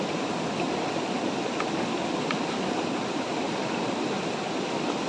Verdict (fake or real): real